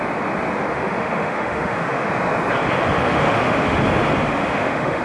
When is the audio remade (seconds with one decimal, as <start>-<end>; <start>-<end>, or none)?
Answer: 0.7-2.1; 3.0-3.8; 4.4-5.0